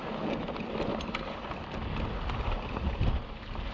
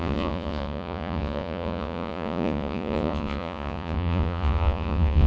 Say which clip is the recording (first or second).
first